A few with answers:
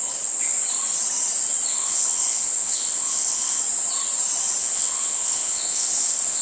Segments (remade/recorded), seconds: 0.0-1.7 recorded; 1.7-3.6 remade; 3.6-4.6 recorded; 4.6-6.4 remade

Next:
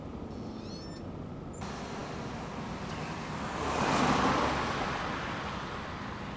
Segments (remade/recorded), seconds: 0.0-6.4 recorded

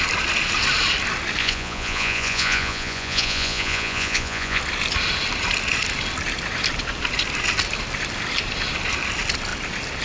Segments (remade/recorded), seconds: 0.0-1.4 recorded; 1.4-4.6 remade; 4.6-10.0 recorded

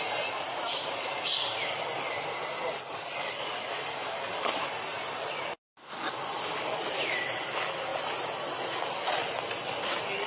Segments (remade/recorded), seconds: 0.0-10.3 recorded

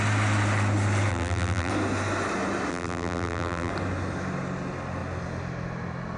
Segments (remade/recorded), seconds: 0.0-1.1 recorded; 1.1-1.7 remade; 1.7-2.7 recorded; 2.7-3.7 remade; 3.7-6.2 recorded

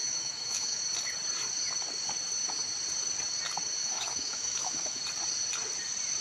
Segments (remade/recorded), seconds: 0.0-0.8 remade; 0.8-3.8 recorded; 3.8-5.0 remade; 5.0-6.2 recorded

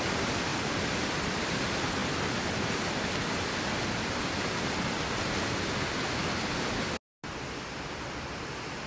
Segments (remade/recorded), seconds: 0.0-8.9 recorded